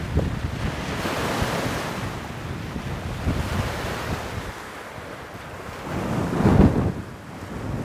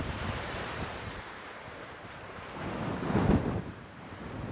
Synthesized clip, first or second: second